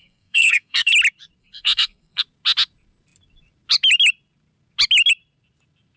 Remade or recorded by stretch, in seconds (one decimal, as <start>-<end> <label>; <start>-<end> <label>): 0.0-0.9 remade; 0.9-1.4 recorded; 1.4-2.2 remade; 2.2-6.0 recorded